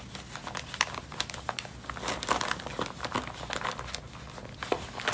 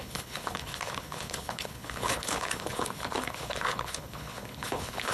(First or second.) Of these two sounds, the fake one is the second